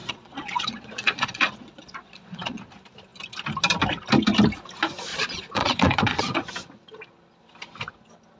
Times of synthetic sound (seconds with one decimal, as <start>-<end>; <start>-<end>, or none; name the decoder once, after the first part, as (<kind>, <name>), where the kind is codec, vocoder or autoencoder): 0.0-2.7 (vocoder, Vocos); 5.1-6.2